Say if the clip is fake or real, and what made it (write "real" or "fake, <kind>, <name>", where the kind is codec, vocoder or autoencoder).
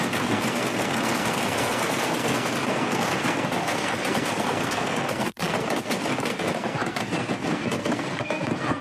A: fake, codec, SNAC